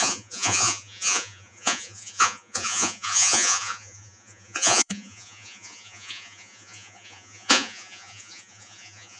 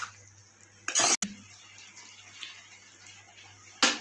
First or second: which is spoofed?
first